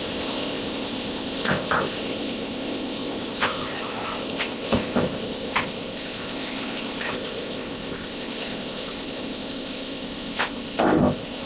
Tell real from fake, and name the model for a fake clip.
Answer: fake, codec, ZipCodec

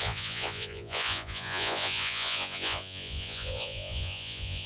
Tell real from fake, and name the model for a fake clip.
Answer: fake, vocoder, Vocos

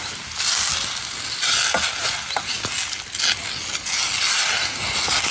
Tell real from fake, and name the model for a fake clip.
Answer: real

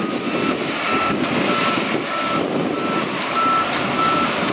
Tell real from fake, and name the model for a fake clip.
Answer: real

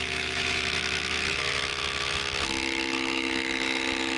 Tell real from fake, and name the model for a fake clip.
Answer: fake, autoencoder, DAC-VAE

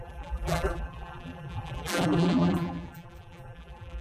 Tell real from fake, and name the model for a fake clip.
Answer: fake, vocoder, BigVGAN v2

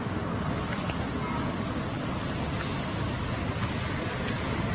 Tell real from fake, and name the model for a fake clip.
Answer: real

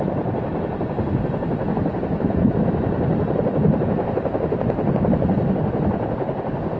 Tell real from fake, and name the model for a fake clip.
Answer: real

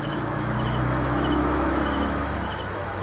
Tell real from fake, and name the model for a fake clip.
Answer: fake, autoencoder, DAC-VAE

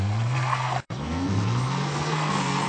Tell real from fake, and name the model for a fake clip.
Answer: fake, codec, SNAC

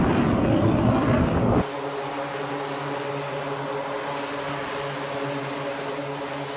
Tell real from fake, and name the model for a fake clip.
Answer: real